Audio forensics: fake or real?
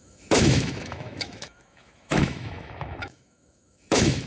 fake